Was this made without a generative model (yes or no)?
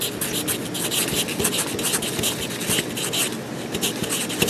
yes